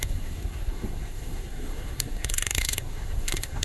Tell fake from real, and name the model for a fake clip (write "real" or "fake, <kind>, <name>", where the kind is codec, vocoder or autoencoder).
fake, codec, SNAC